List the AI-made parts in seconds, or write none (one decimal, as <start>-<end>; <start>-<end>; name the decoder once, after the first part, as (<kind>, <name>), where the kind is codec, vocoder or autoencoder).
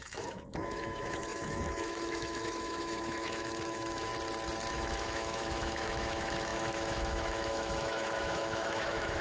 0.0-4.1 (autoencoder, DAC-VAE); 4.7-9.2